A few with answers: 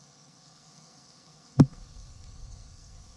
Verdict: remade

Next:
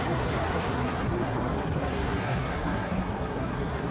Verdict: remade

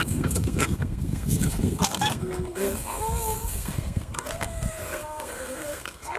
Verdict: remade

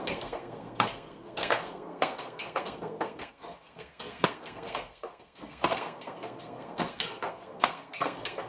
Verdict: remade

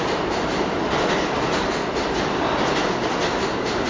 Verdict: recorded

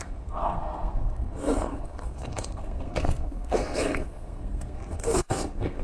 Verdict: remade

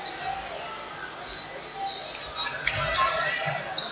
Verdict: recorded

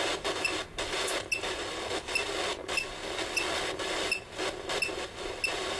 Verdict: recorded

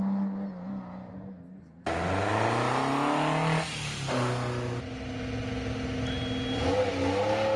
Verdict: recorded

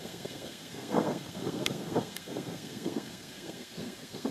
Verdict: remade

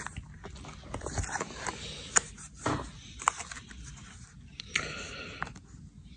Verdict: recorded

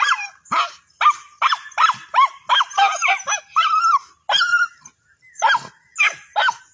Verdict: recorded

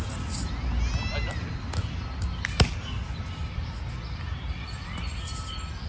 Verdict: recorded